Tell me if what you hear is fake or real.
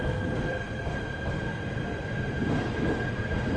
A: fake